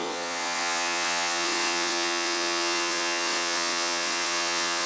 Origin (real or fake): fake